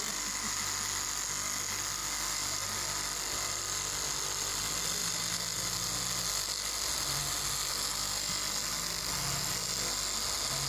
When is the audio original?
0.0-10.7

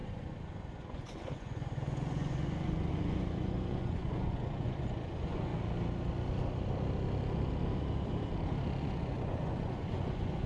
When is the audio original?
5.5-8.8

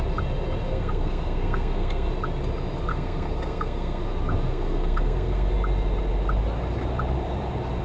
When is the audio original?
0.0-0.7; 2.1-2.9; 4.0-4.5; 5.5-7.8

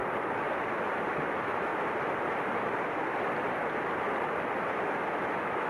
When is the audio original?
0.0-1.1; 1.7-5.1